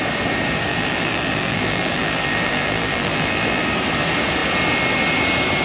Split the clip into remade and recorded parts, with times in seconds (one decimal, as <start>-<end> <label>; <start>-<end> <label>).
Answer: 0.0-0.7 recorded; 0.7-3.6 remade; 3.6-5.6 recorded